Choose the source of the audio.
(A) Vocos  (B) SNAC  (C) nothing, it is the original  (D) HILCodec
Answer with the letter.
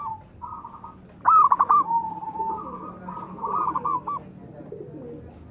C